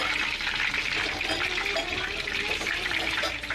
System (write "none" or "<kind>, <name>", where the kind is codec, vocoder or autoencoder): none